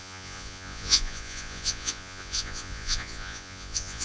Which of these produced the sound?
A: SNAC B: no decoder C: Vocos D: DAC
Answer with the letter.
C